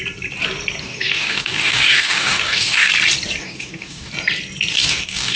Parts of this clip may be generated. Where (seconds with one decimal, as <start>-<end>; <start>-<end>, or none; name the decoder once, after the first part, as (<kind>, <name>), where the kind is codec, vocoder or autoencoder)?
0.8-2.9 (codec, DAC); 3.4-4.1; 4.7-5.4